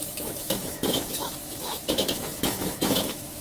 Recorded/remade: remade